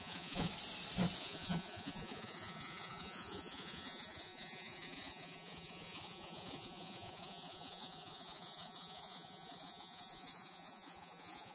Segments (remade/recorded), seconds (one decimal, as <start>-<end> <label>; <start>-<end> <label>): 0.0-0.5 remade; 0.5-1.2 recorded; 1.2-11.5 remade